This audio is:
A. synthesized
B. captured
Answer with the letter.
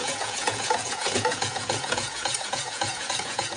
A